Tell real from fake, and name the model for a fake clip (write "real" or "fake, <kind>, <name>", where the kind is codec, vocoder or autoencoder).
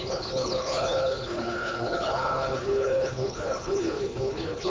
fake, codec, HILCodec